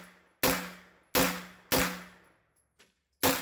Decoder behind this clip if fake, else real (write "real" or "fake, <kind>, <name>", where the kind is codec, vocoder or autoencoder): real